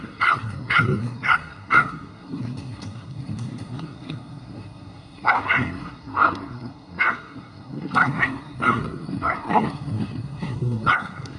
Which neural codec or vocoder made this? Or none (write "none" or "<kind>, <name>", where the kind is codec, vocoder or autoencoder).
codec, SNAC